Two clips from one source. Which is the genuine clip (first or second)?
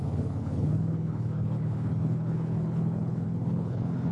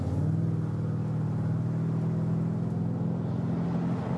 second